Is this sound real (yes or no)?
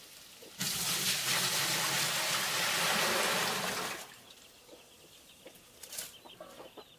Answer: yes